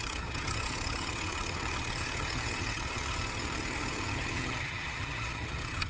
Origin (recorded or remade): remade